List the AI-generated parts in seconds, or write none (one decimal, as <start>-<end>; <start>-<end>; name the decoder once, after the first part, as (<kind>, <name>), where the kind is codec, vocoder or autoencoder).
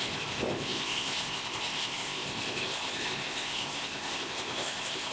0.0-5.1 (codec, ZipCodec)